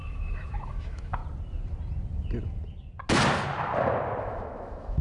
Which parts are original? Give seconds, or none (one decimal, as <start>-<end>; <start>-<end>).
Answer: 1.2-4.2